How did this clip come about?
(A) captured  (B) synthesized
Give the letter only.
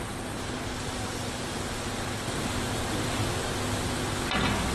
A